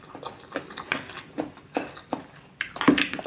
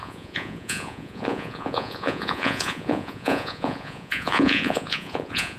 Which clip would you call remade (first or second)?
second